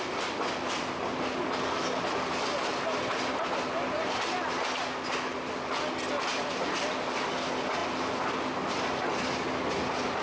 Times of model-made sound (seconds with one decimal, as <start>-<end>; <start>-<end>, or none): 6.3-7.0